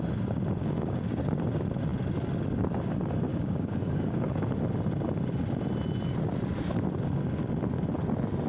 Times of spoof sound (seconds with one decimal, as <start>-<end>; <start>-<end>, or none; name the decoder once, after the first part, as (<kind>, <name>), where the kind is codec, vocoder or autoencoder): 0.6-1.2 (codec, DAC); 3.3-4.5